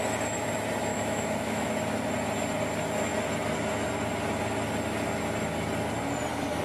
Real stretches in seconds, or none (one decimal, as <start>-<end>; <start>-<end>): 0.0-0.9; 1.7-6.6